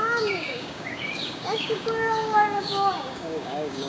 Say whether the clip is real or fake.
fake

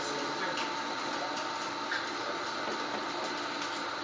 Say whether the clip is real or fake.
real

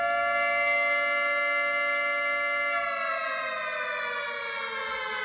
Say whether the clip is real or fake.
real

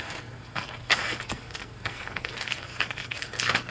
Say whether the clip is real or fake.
fake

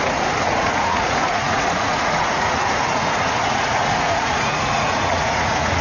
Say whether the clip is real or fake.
fake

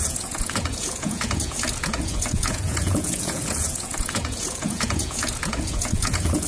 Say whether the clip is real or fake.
fake